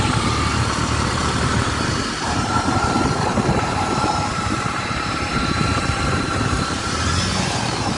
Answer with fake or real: fake